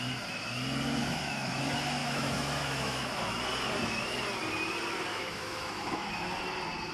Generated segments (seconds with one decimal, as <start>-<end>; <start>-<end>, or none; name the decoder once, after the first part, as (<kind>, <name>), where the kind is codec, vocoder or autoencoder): 1.0-1.6 (autoencoder, DAC-VAE); 2.0-3.4; 5.1-6.1